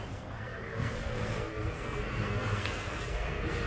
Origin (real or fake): fake